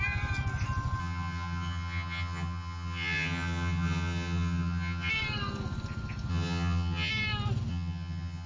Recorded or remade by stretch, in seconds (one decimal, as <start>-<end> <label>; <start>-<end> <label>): 0.0-1.0 recorded; 1.0-5.1 remade; 5.1-6.3 recorded; 6.3-7.1 remade; 7.1-7.7 recorded; 7.7-8.5 remade